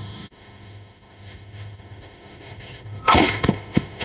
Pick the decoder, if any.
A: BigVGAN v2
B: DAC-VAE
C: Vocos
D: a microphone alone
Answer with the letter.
B